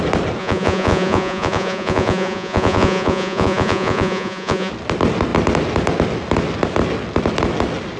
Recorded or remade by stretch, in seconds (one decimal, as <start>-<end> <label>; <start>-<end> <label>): 0.0-0.4 recorded; 0.4-4.7 remade; 4.7-8.0 recorded